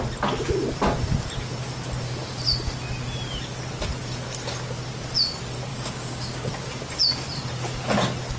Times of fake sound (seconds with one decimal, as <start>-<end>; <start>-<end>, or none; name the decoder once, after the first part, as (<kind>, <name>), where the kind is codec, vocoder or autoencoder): 5.7-6.5 (codec, DAC)